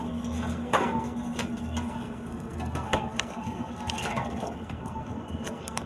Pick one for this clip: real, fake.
fake